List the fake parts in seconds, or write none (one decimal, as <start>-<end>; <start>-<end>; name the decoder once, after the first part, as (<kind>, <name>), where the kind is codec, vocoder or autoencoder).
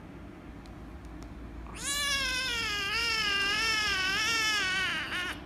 3.0-4.1 (vocoder, BigVGAN v2)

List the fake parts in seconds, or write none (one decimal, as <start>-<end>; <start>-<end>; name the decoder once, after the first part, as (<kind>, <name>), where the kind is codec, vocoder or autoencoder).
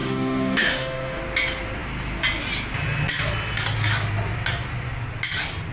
0.0-1.2 (autoencoder, DAC-VAE)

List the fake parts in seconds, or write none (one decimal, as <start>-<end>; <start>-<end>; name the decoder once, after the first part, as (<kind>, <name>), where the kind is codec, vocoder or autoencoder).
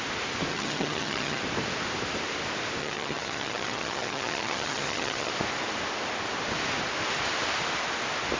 0.5-1.4 (vocoder, HiFi-GAN); 2.8-5.3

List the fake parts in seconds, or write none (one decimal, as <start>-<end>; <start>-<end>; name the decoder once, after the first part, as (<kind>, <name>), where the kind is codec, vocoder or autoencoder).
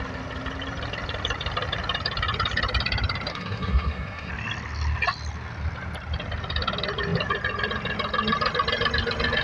3.3-4.3 (codec, SNAC)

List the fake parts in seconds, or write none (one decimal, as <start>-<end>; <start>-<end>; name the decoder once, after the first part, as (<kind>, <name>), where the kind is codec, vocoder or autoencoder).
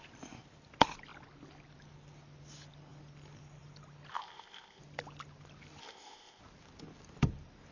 4.1-4.8 (codec, ZipCodec); 5.8-6.4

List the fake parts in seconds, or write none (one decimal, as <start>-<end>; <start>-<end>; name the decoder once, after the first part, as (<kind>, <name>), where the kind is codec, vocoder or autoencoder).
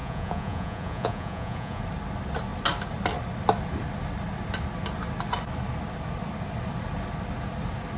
0.0-1.8 (vocoder, Vocos)